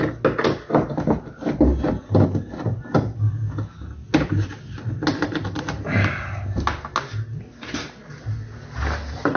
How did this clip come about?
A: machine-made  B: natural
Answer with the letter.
B